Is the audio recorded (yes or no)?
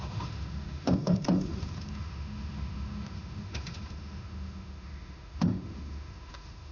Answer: no